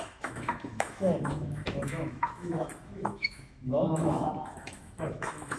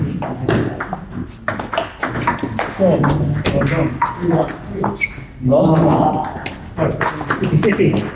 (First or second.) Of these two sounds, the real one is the second